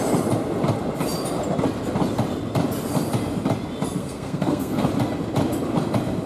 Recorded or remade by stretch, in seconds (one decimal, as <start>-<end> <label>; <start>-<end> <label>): 0.0-4.0 recorded; 4.0-4.9 remade; 4.9-6.3 recorded